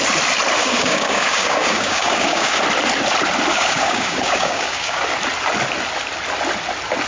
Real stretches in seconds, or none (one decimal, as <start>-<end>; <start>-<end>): 0.0-0.6; 2.6-3.5; 5.0-7.1